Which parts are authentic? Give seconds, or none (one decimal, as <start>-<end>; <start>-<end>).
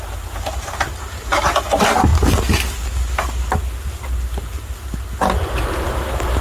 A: 0.0-6.4